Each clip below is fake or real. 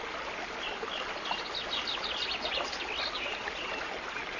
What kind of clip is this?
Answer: real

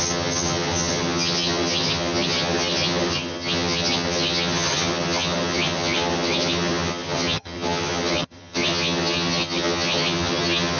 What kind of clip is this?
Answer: fake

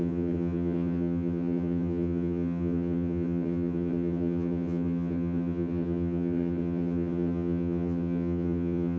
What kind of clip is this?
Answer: fake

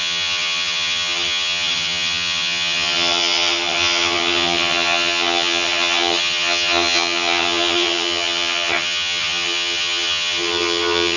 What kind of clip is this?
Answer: fake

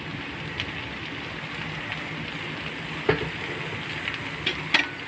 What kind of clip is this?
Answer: real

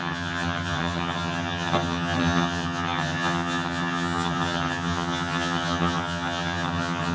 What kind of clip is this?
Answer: fake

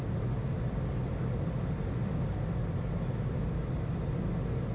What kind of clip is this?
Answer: real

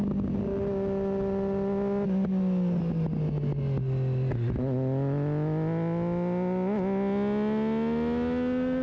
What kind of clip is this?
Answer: real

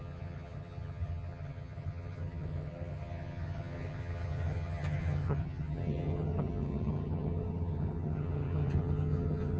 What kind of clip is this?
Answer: fake